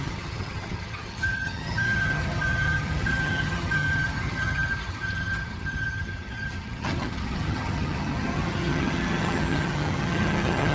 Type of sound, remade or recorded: remade